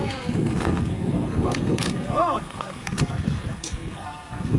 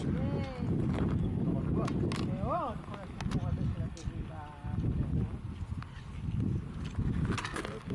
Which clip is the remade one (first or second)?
first